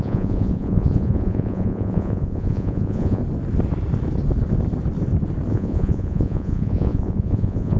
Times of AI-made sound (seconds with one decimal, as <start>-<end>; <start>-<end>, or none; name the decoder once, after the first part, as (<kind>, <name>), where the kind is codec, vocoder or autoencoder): 0.0-3.2 (vocoder, Vocos); 5.5-7.8